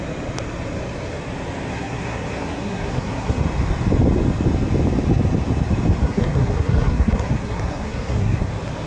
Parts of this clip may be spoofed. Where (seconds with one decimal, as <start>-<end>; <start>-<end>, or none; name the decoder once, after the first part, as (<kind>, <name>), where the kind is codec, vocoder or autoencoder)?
1.7-3.4 (codec, SNAC); 6.0-8.5